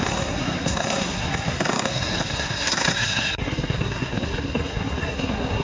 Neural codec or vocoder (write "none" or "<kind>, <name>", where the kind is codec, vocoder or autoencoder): codec, SNAC